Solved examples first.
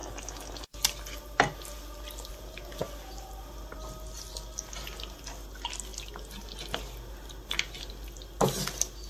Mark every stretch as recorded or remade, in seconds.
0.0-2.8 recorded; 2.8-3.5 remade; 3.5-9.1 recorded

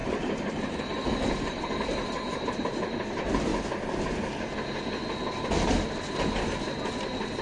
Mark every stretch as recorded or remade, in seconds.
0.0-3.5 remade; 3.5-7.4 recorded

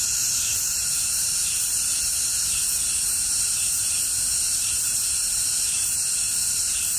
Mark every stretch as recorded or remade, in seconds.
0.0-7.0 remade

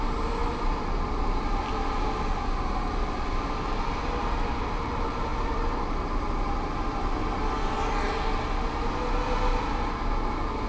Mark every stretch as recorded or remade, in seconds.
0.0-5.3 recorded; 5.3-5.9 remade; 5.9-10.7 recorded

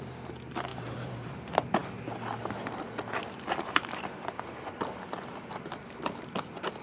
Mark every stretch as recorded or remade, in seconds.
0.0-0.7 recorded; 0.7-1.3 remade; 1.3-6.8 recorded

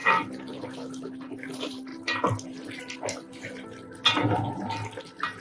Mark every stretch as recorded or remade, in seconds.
0.0-5.4 recorded